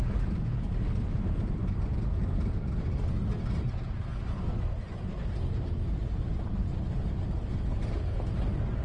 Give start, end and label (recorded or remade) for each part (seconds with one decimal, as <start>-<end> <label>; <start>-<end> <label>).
0.0-8.8 recorded